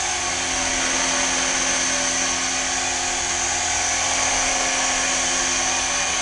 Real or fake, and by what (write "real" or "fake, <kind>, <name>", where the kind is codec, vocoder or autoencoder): real